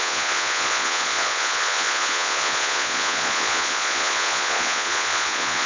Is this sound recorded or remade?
remade